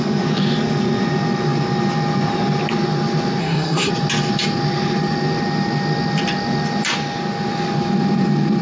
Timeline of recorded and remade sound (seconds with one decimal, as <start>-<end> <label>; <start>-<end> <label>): 0.0-3.4 recorded; 3.4-3.9 remade; 3.9-8.6 recorded